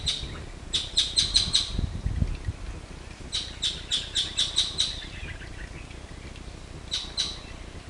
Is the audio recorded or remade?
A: recorded